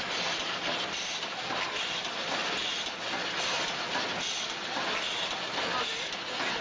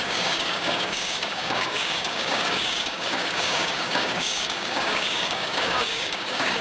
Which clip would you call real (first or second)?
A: first